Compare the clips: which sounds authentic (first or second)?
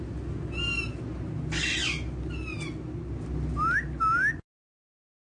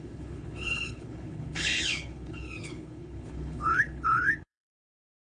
first